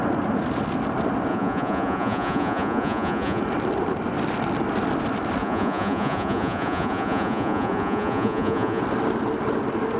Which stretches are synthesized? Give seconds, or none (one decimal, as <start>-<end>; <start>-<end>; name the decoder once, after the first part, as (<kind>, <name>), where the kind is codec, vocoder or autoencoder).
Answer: 1.3-3.4 (vocoder, Vocos); 5.4-8.8

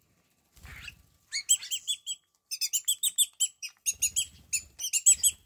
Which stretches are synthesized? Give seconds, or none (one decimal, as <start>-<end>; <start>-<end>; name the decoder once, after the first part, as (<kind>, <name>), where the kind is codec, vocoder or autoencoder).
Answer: none

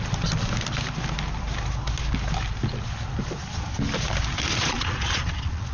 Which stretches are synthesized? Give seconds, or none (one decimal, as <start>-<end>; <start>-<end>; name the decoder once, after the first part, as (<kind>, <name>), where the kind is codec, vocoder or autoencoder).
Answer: 4.6-5.7 (vocoder, Vocos)

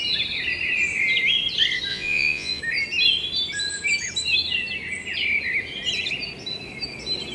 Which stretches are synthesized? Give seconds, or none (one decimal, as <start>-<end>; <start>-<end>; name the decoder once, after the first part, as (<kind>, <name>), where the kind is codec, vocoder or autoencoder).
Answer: 1.9-2.6 (vocoder, Vocos)

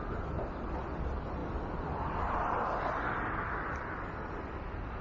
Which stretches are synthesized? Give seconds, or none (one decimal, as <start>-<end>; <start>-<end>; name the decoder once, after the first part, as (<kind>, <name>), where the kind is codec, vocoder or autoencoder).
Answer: none

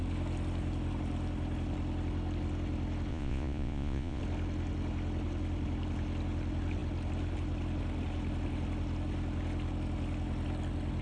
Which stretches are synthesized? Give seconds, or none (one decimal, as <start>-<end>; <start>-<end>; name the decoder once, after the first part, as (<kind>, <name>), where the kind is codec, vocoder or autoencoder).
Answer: 3.1-4.2 (vocoder, Vocos)

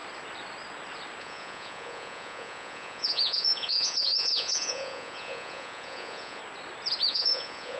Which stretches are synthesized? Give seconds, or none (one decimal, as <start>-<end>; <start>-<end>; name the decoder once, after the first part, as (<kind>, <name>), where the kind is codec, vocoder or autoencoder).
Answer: 1.2-6.4 (vocoder, Vocos); 7.1-7.8

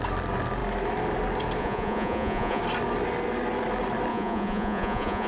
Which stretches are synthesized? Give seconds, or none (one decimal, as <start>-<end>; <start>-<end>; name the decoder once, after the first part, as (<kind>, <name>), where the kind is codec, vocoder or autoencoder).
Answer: 1.6-2.6 (vocoder, Vocos); 4.1-5.3